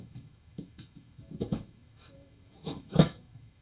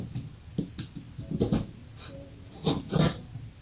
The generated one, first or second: first